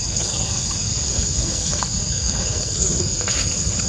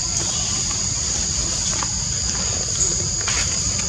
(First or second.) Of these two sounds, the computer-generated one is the first